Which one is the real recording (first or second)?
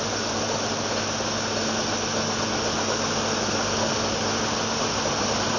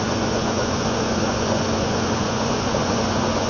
first